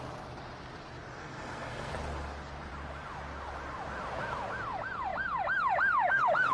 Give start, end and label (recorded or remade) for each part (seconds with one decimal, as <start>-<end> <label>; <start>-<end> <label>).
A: 0.0-1.2 recorded; 1.2-1.9 remade; 1.9-6.5 recorded